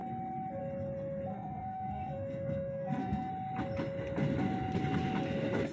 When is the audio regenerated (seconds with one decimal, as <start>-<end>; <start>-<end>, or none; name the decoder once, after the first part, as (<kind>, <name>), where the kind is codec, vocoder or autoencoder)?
1.3-3.3 (codec, SNAC)